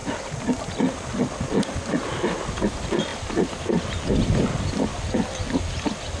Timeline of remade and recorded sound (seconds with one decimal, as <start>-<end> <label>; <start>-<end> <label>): 0.0-2.6 recorded; 2.6-4.9 remade; 4.9-6.2 recorded

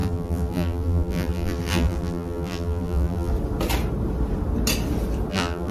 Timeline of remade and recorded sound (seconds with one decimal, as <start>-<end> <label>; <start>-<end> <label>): 0.0-3.3 remade; 3.3-5.3 recorded; 5.3-5.7 remade

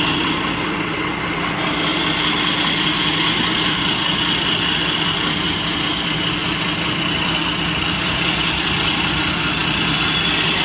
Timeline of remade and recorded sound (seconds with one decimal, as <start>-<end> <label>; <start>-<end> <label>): 0.0-3.5 recorded; 3.5-5.1 remade; 5.1-10.6 recorded

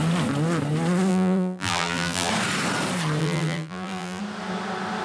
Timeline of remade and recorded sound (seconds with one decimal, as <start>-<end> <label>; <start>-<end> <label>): 0.0-1.1 recorded; 1.1-2.3 remade; 2.3-3.2 recorded; 3.2-4.2 remade; 4.2-5.0 recorded

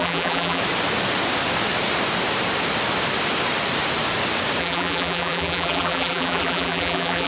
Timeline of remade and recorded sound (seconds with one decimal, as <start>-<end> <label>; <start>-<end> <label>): 0.0-0.6 remade; 0.6-4.6 recorded; 4.6-7.3 remade